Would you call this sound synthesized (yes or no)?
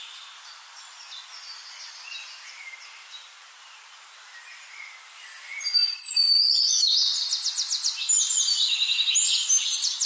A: no